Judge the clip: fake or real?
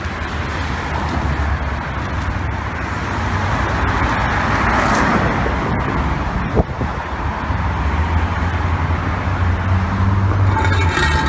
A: real